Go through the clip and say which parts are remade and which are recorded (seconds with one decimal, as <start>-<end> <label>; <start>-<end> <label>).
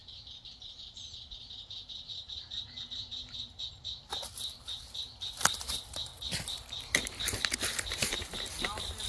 0.0-9.1 remade